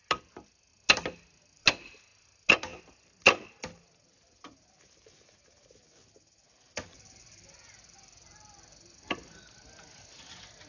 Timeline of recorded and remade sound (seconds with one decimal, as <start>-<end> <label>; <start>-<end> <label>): 0.0-10.7 recorded